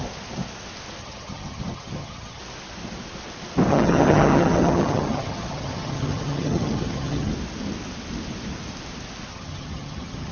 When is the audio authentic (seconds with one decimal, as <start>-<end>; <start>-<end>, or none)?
0.0-1.0; 2.4-3.7; 7.3-9.3